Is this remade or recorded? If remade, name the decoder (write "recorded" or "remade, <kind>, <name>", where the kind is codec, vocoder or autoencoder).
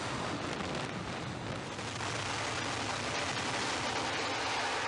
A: recorded